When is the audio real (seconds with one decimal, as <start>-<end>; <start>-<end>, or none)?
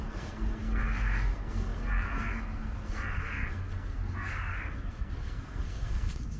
none